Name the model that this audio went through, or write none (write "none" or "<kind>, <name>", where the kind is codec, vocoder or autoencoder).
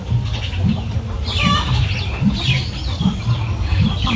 none